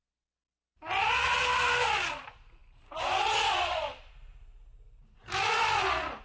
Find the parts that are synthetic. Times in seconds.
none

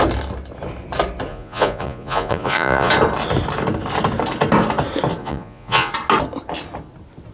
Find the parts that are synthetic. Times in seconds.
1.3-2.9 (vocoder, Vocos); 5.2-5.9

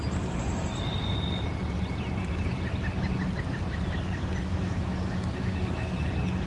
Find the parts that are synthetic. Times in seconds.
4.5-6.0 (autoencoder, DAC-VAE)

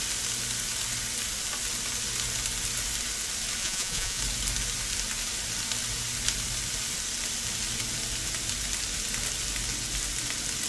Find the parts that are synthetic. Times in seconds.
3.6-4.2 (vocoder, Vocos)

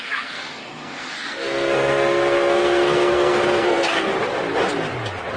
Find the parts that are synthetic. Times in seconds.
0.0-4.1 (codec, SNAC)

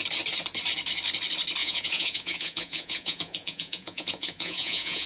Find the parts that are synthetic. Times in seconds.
1.6-5.1 (vocoder, Vocos)

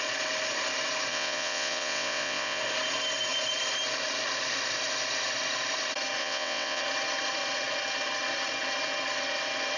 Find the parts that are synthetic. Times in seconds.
1.1-2.6 (vocoder, WaveNeXt); 6.2-6.8